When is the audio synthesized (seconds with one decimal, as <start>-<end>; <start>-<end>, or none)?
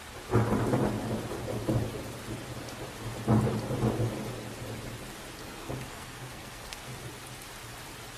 5.4-6.9